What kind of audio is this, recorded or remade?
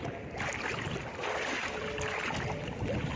recorded